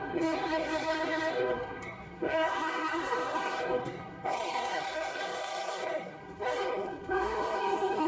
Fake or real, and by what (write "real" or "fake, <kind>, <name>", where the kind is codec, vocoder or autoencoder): fake, codec, SNAC